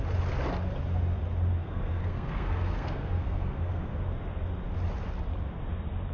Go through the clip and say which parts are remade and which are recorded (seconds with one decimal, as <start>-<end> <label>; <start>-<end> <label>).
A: 0.0-1.6 recorded; 1.6-4.0 remade; 4.0-6.1 recorded